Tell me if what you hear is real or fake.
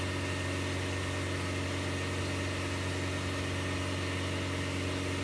real